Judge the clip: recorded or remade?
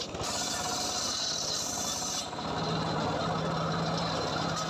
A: recorded